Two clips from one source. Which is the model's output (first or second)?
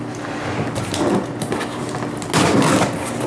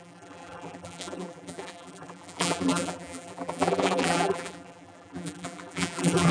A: second